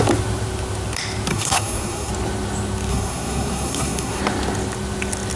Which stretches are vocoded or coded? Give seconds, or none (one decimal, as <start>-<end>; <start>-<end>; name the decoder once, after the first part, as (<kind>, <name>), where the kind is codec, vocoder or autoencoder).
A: 1.3-2.1 (codec, SNAC); 2.9-4.2